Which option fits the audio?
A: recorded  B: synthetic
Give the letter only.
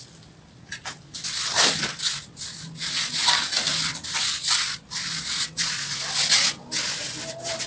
A